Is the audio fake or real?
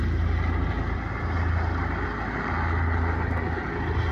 real